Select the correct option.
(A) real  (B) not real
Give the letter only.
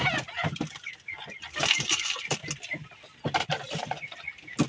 A